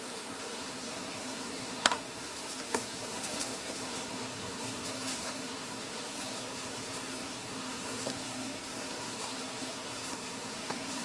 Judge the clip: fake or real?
fake